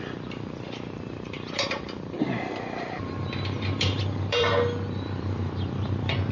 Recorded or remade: remade